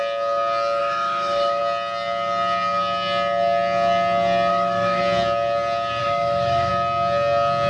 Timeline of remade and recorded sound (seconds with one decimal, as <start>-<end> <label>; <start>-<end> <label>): 0.0-0.8 recorded; 0.8-1.6 remade; 1.6-4.5 recorded; 4.5-5.0 remade; 5.0-6.0 recorded; 6.0-6.7 remade; 6.7-7.7 recorded